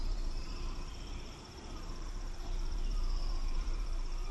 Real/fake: fake